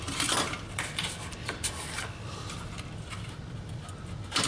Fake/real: real